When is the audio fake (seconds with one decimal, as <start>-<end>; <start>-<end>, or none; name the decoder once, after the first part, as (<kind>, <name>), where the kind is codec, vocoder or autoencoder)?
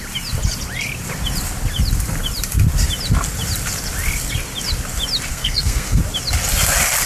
5.3-6.0 (codec, SNAC)